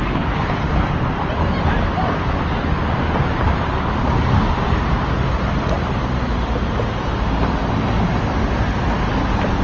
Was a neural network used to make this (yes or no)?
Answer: no